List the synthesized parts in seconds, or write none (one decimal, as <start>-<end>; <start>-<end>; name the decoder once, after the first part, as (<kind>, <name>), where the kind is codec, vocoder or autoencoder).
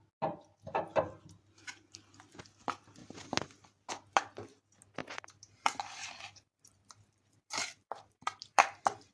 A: 5.0-9.1 (vocoder, BigVGAN v2)